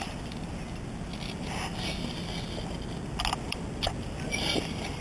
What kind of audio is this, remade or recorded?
recorded